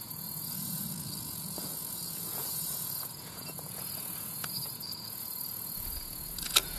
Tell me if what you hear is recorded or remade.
remade